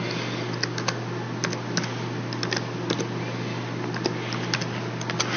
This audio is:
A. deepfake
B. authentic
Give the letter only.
B